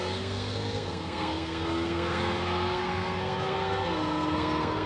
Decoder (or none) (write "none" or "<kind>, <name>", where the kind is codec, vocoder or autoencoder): codec, SNAC